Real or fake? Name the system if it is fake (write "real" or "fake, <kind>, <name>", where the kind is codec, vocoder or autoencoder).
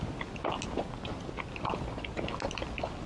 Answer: real